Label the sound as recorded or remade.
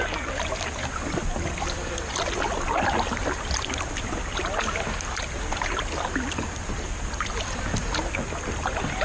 recorded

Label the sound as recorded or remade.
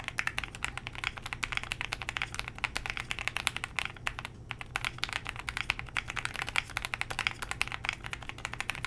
recorded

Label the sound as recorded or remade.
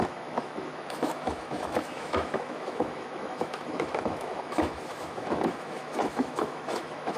remade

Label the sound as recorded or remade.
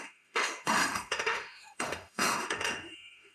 remade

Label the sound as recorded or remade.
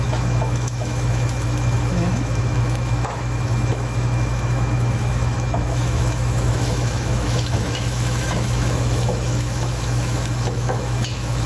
remade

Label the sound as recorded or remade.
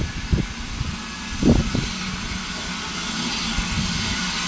recorded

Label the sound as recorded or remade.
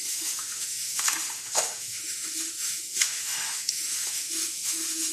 remade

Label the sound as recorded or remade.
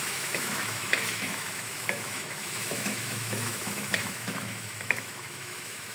remade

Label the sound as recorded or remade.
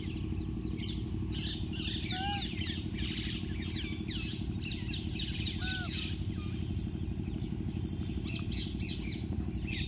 recorded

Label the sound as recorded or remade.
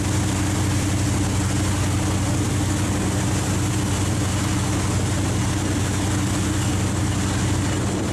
recorded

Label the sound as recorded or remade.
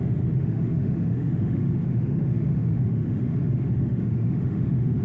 remade